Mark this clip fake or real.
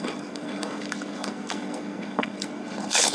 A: fake